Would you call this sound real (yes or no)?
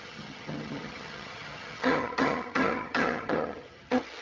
no